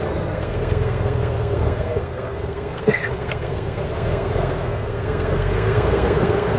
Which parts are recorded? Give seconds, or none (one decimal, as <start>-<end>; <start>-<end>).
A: none